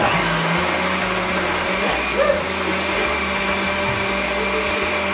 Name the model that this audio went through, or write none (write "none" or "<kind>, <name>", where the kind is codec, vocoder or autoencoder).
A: none